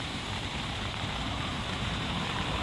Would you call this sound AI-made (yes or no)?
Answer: yes